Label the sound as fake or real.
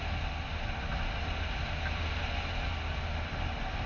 real